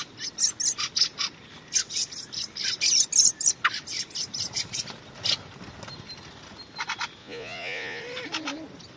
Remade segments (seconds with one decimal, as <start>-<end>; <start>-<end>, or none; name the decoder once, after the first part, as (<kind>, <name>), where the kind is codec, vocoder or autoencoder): 7.2-8.0 (vocoder, Vocos)